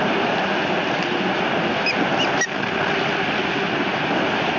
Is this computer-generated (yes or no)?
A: no